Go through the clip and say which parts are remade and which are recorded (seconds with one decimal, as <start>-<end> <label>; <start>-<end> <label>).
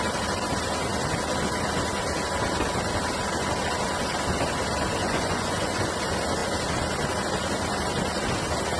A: 0.0-5.0 recorded; 5.0-5.9 remade; 5.9-8.8 recorded